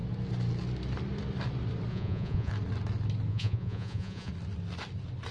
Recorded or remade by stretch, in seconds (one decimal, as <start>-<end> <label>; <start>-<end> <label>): 0.0-1.9 recorded; 1.9-2.5 remade; 2.5-3.3 recorded; 3.3-4.3 remade; 4.3-5.3 recorded